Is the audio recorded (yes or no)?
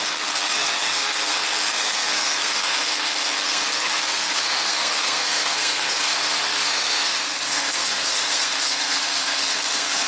no